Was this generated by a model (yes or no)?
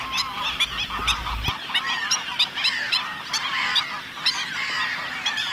no